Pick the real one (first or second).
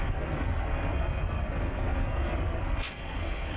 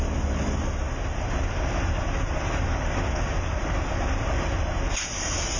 second